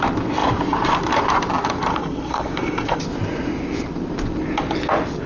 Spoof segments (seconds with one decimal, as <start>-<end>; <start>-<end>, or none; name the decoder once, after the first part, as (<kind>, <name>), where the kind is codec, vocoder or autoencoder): 1.9-3.0 (codec, SNAC)